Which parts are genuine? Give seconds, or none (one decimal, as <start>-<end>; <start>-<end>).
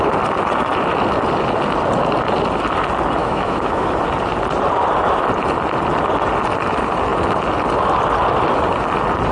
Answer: 0.0-3.2; 3.9-9.3